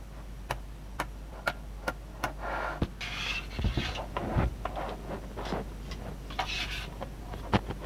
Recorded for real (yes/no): yes